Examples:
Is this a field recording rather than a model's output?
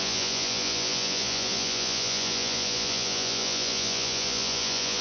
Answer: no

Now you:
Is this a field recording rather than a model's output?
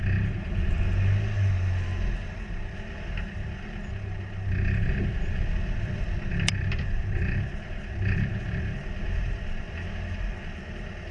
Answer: yes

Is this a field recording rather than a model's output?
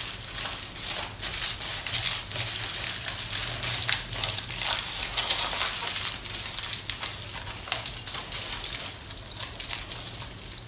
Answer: yes